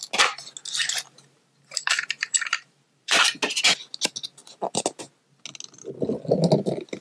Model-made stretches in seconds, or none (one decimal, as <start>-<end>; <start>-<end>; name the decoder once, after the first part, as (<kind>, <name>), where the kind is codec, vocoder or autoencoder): 0.8-3.3 (vocoder, BigVGAN v2)

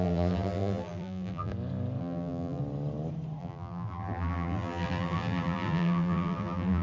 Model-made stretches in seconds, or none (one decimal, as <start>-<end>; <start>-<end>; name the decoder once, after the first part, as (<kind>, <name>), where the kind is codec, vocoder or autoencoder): 0.0-1.5 (vocoder, BigVGAN v2); 2.0-2.6; 3.4-6.8

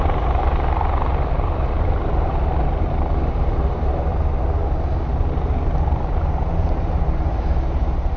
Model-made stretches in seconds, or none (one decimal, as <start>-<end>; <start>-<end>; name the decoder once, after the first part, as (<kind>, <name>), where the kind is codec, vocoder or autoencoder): 0.0-4.1 (vocoder, BigVGAN v2); 5.1-8.2